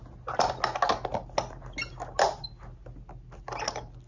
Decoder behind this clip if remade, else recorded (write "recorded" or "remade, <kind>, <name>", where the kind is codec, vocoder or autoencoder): recorded